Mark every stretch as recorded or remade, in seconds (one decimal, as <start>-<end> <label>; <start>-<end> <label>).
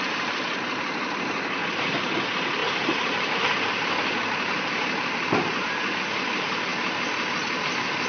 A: 0.0-2.6 recorded; 2.6-5.7 remade; 5.7-8.1 recorded